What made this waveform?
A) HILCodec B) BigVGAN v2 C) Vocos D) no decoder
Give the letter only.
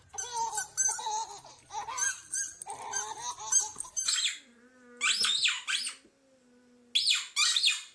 D